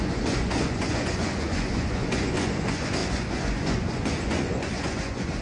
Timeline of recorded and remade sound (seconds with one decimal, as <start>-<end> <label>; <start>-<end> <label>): 0.0-5.4 remade